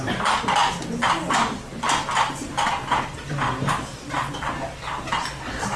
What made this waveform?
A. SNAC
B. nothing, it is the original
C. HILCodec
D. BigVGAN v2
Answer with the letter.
B